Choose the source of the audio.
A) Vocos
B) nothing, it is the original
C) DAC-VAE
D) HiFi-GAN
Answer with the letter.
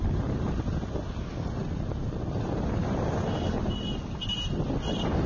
B